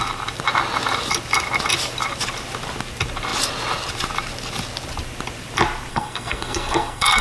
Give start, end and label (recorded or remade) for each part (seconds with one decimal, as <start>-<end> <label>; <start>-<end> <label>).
0.0-5.9 recorded; 5.9-7.2 remade